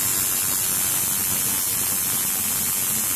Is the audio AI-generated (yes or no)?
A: no